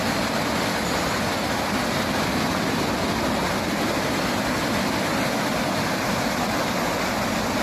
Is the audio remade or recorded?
recorded